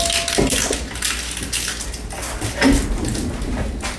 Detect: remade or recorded recorded